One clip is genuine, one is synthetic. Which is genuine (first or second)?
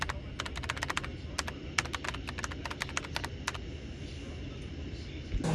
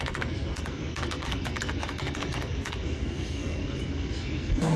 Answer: first